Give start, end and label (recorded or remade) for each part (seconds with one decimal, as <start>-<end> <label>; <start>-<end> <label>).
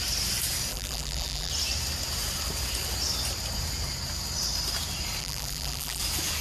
0.0-0.7 recorded; 0.7-1.5 remade; 1.5-5.2 recorded; 5.2-6.0 remade; 6.0-6.4 recorded